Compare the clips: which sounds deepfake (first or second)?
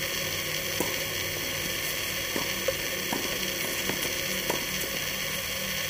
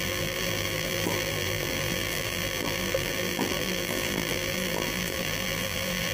second